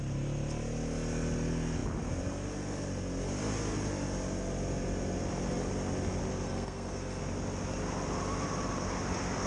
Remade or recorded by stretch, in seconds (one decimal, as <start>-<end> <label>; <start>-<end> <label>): 0.0-6.3 recorded; 6.3-7.2 remade; 7.2-9.5 recorded

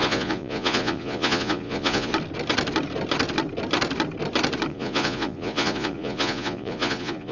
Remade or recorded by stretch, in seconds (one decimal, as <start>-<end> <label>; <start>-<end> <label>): 0.0-2.1 remade; 2.1-4.7 recorded; 4.7-7.3 remade

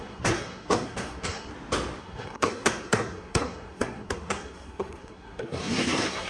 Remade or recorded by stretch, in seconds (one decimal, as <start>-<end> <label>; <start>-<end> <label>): 0.0-1.5 remade; 1.5-2.0 recorded; 2.0-6.3 remade

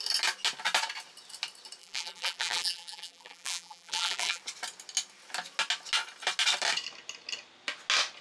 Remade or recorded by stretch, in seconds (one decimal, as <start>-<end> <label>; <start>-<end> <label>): 0.0-1.8 recorded; 1.8-4.4 remade; 4.4-8.2 recorded